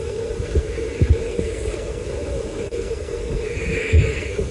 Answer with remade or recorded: remade